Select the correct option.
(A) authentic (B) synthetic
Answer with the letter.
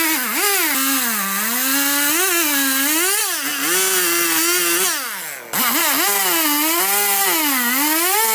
A